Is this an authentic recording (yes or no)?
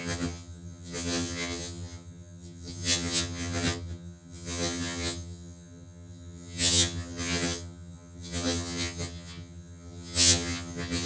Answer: no